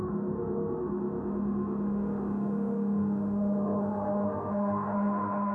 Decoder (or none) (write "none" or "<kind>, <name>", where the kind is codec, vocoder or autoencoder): autoencoder, DAC-VAE